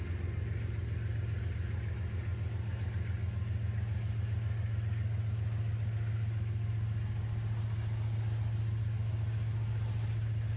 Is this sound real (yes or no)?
yes